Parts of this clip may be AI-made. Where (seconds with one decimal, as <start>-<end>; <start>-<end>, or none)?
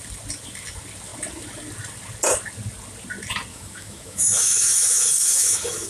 3.5-5.9